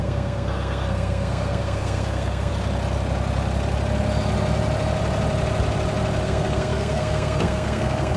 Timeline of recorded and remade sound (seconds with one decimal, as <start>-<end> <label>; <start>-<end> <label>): 0.0-2.5 remade; 2.5-6.2 recorded; 6.2-8.2 remade